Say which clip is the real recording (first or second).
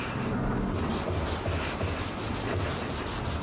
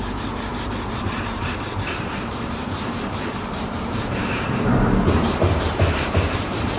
first